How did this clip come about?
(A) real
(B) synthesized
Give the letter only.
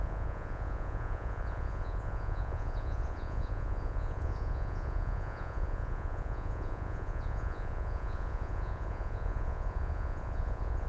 B